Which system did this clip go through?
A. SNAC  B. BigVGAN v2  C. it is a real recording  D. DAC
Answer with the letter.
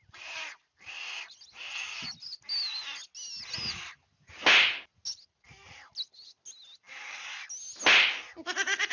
C